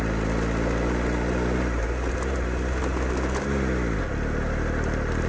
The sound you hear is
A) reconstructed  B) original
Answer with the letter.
B